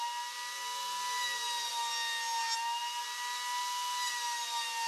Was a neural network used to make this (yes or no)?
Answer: no